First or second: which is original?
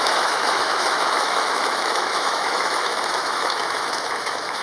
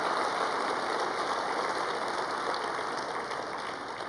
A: second